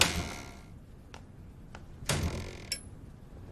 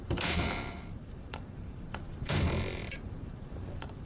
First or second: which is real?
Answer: first